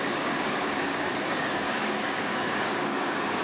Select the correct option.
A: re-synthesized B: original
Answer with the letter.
A